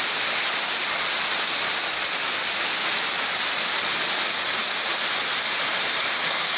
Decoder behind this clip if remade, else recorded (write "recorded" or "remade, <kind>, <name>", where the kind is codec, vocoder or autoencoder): recorded